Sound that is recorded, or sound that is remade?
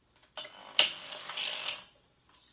recorded